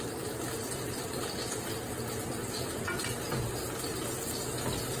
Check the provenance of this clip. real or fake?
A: real